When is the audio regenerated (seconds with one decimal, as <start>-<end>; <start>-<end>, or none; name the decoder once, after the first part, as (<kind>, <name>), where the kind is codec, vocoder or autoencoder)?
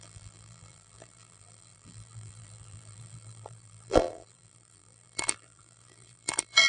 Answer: 0.0-6.7 (vocoder, BigVGAN v2)